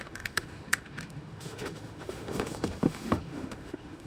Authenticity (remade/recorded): remade